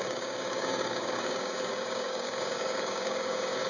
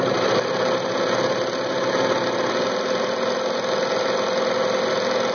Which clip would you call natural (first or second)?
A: second